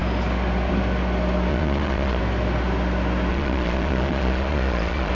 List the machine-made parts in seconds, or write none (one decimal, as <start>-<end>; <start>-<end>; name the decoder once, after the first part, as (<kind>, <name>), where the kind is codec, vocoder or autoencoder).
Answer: 1.5-2.2 (vocoder, Vocos); 3.3-5.1